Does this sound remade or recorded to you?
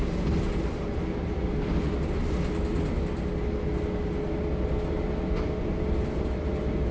recorded